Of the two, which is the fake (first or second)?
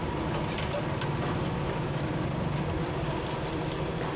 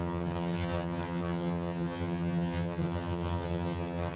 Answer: second